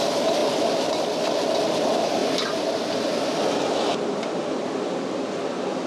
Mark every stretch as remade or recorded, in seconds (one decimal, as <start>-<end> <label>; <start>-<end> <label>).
0.0-0.4 recorded; 0.4-1.2 remade; 1.2-2.2 recorded; 2.2-4.6 remade; 4.6-5.9 recorded